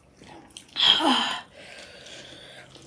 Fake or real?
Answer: real